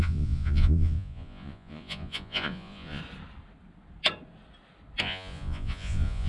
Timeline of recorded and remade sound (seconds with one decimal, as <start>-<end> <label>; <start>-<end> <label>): 0.0-3.0 remade; 3.0-5.0 recorded; 5.0-6.3 remade